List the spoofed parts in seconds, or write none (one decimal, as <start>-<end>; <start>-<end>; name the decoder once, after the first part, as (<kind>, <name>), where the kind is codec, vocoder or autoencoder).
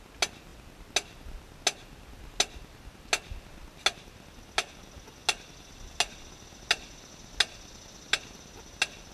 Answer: none